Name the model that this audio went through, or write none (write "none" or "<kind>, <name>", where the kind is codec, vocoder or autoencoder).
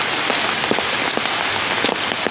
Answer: none